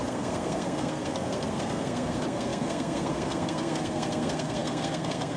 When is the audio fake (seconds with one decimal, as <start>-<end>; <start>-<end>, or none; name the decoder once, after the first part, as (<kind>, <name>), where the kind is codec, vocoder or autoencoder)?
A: 0.0-5.4 (codec, SNAC)